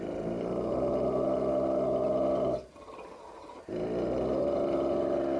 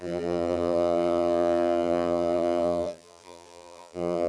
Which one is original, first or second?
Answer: first